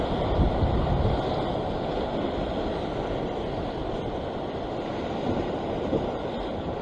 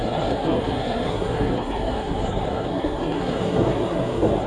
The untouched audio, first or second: first